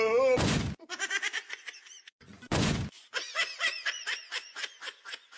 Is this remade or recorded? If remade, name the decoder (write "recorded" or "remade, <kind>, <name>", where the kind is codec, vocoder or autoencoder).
remade, vocoder, Vocos